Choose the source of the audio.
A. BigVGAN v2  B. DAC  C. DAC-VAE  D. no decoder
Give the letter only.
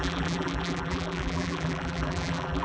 A